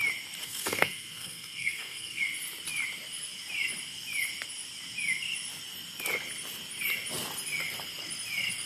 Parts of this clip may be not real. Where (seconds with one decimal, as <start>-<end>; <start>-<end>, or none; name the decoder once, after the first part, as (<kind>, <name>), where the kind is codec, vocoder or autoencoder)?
0.4-2.2 (codec, SNAC)